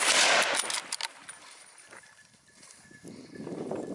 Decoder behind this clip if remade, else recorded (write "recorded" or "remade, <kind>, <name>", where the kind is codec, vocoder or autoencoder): recorded